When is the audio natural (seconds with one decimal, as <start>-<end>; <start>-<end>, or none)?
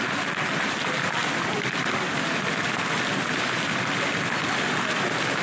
0.0-5.4